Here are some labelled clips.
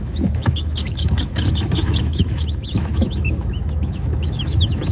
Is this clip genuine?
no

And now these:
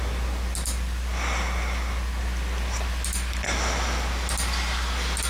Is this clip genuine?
yes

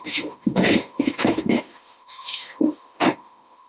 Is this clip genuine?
no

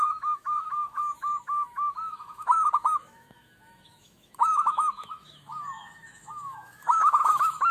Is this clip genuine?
no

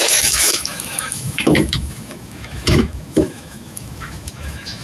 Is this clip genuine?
no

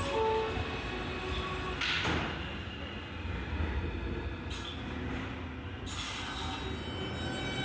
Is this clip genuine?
yes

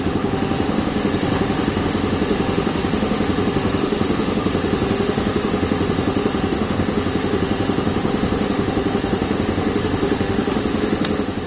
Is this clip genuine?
no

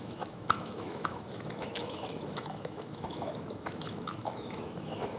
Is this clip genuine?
no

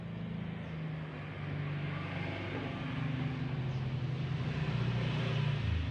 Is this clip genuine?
yes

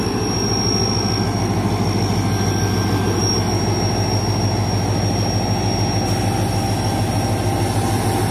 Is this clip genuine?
yes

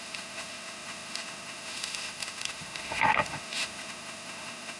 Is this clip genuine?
no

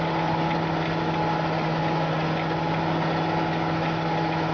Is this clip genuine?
yes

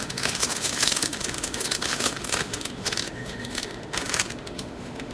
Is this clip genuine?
no